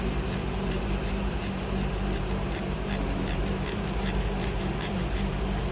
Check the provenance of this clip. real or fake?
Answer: fake